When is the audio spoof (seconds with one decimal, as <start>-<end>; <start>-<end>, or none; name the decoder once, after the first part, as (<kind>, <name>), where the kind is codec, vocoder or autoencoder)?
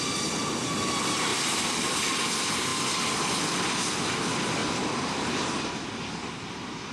1.3-2.1 (vocoder, BigVGAN v2); 4.6-5.7